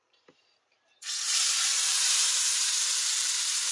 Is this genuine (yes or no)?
no